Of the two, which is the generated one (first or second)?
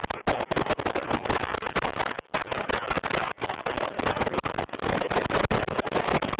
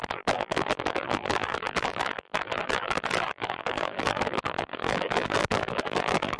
second